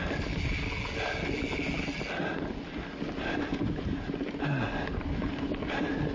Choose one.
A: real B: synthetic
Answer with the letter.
A